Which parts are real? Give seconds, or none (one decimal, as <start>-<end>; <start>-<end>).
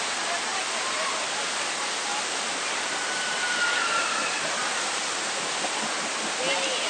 0.0-0.5; 1.5-2.1; 5.1-6.9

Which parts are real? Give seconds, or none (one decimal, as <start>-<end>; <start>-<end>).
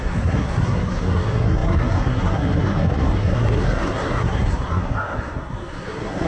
none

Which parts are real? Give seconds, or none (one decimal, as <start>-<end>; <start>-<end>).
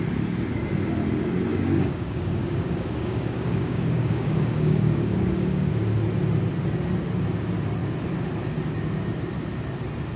0.0-1.5; 5.7-10.2